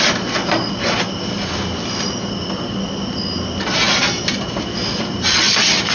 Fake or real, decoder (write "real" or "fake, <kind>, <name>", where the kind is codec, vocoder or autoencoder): real